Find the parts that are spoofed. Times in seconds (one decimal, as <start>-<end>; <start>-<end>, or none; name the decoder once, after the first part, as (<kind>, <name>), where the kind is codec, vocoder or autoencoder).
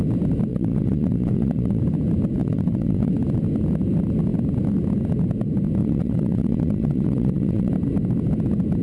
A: 0.5-1.8 (vocoder, WaveNeXt); 2.4-3.1; 5.8-7.7